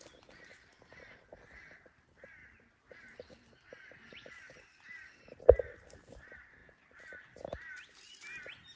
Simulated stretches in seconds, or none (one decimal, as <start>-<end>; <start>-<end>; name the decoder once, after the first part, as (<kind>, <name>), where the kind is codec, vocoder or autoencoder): 6.6-7.3 (vocoder, BigVGAN v2)